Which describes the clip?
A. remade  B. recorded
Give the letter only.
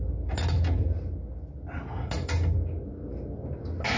B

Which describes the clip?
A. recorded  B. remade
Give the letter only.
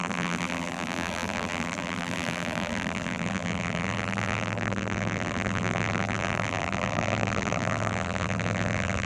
B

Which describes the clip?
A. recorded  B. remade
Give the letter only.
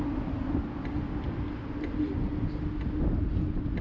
A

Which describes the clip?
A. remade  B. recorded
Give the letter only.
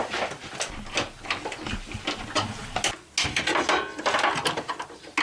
B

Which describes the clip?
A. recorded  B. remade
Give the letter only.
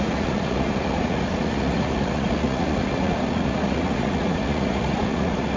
B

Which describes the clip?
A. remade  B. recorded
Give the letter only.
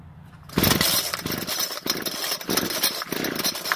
B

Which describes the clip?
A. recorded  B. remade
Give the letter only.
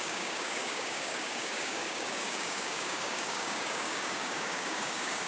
B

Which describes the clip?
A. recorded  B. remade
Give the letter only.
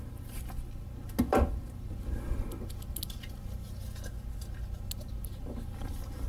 A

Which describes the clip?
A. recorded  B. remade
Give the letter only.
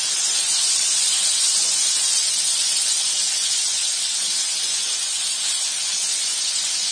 B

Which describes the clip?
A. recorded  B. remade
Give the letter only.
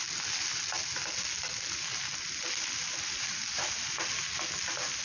A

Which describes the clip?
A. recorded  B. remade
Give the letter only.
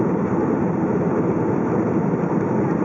A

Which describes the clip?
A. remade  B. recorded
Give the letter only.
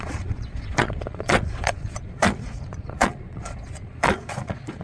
A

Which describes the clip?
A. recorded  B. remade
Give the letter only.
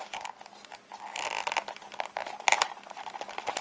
A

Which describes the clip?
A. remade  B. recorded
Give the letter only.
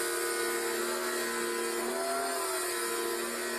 B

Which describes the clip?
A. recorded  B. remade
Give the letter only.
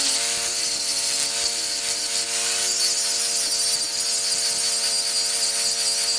A